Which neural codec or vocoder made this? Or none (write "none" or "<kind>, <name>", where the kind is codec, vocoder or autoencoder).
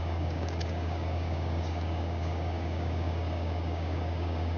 codec, DAC